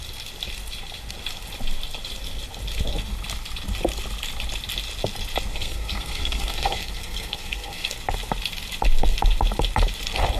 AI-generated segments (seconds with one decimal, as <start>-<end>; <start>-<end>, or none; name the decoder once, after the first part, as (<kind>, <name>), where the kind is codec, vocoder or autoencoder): 5.5-7.9 (codec, SNAC)